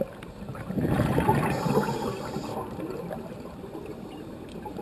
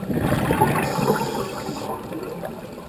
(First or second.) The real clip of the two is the second